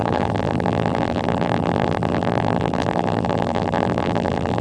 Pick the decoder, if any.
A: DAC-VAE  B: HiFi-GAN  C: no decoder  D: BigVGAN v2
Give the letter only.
D